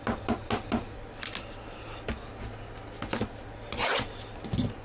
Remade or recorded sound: recorded